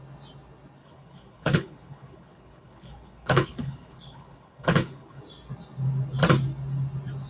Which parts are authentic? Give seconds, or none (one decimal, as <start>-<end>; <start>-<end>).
0.0-0.8; 5.2-7.3